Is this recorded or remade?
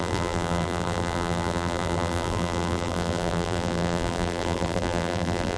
remade